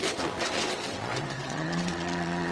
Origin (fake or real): fake